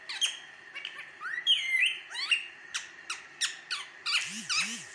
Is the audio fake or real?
real